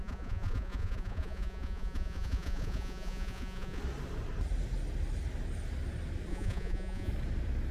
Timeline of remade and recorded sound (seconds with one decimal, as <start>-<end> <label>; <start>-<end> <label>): 0.0-3.8 remade; 3.8-6.3 recorded; 6.3-7.1 remade; 7.1-7.7 recorded